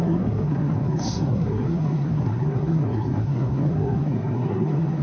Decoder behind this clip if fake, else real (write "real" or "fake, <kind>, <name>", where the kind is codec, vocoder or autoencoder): fake, codec, SNAC